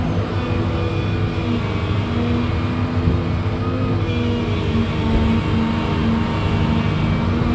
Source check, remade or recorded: recorded